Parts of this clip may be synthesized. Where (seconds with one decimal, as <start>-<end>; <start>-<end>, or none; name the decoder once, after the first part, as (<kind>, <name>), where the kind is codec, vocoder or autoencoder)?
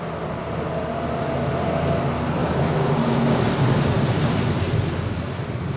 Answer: 2.4-3.4 (codec, DAC)